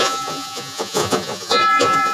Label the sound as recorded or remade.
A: remade